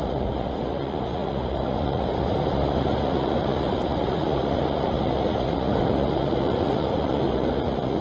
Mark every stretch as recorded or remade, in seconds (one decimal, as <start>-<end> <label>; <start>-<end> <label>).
0.0-8.0 remade